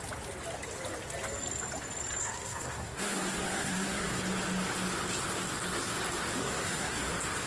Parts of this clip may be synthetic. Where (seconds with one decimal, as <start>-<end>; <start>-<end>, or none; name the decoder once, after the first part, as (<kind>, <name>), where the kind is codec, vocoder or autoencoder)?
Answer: 2.2-4.2 (codec, SNAC); 6.4-7.1